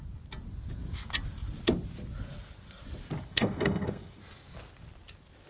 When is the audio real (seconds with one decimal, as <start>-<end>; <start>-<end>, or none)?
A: 0.0-3.3; 4.2-5.5